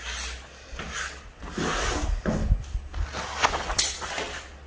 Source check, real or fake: real